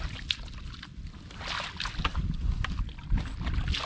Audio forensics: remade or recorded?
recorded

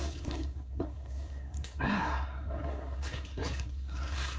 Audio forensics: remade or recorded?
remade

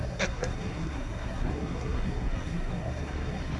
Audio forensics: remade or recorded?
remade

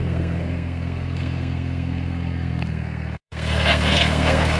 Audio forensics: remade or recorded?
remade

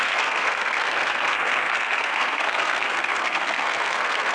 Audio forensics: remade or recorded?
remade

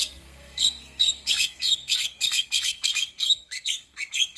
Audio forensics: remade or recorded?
remade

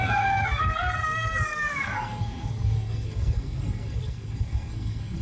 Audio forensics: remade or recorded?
remade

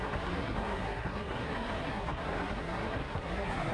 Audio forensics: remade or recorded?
remade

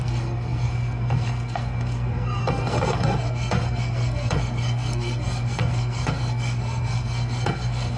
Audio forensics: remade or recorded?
remade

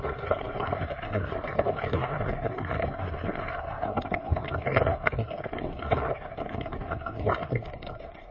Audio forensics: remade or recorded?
remade